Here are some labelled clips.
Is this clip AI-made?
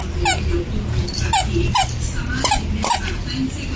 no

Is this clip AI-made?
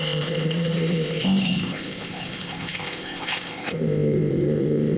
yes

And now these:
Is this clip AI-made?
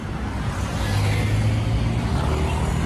no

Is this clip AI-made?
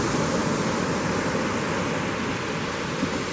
no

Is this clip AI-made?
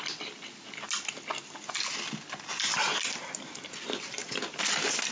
no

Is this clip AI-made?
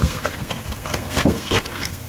yes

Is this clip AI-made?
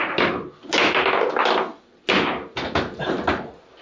no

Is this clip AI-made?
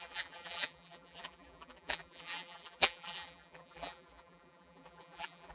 yes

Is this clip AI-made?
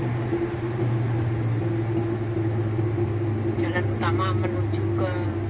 no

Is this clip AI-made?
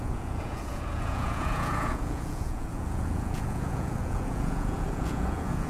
yes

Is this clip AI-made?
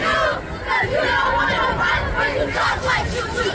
no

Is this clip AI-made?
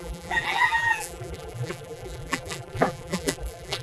yes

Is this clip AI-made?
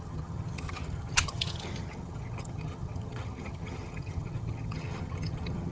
yes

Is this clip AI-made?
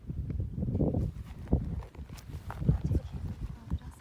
yes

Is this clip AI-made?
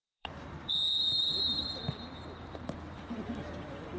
yes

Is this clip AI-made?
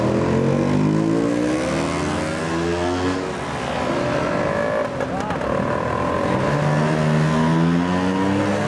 no